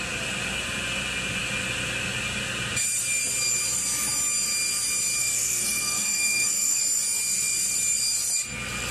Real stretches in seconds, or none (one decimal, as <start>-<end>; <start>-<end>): 0.0-5.2; 6.8-8.9